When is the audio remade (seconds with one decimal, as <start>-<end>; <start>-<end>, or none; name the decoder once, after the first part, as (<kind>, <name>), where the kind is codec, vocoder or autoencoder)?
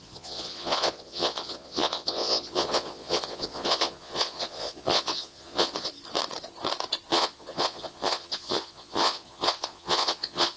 0.0-5.9 (vocoder, Vocos); 7.1-10.6